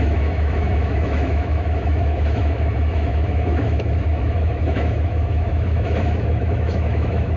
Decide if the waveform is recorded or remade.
remade